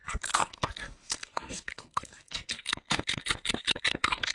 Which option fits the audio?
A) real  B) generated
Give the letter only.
B